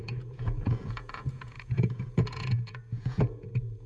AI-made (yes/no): yes